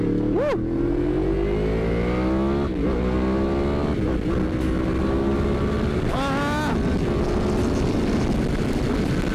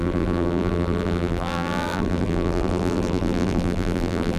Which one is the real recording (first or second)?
first